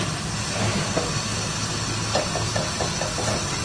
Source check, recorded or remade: recorded